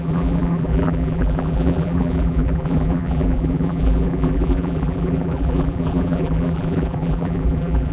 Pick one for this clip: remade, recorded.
remade